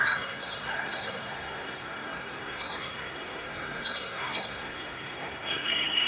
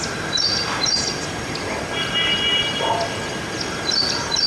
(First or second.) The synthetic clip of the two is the first